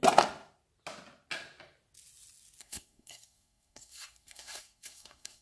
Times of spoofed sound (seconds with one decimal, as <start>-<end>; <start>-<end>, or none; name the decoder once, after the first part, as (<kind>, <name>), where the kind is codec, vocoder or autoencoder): 2.6-5.4 (codec, SNAC)